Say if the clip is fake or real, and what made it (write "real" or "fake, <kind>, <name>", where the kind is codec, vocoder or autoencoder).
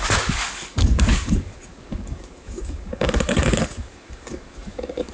fake, codec, DAC